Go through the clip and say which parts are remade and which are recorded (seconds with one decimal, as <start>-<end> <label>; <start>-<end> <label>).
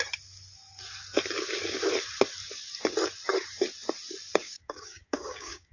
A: 0.0-4.4 recorded; 4.4-5.7 remade